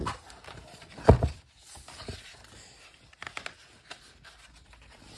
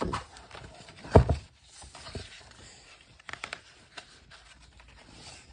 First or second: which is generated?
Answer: second